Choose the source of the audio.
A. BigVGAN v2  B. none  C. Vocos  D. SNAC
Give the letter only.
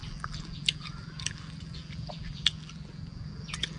A